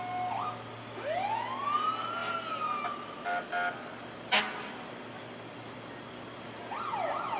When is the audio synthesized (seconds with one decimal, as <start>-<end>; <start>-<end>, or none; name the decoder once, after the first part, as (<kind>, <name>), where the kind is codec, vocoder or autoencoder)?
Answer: none